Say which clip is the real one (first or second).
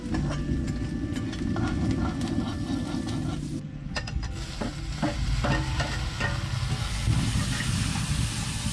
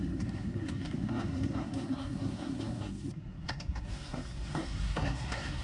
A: first